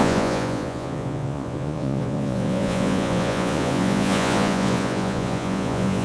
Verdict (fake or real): fake